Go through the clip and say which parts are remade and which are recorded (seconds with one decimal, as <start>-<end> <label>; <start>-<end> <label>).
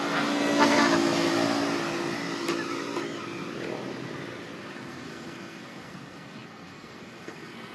0.0-1.3 remade; 1.3-4.6 recorded; 4.6-7.7 remade